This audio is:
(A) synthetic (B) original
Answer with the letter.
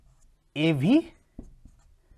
B